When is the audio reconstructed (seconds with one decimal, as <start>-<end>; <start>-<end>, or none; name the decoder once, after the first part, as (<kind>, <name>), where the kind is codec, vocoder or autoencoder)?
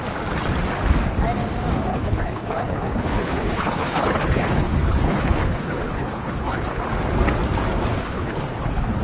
1.9-6.8 (codec, HILCodec); 7.9-9.0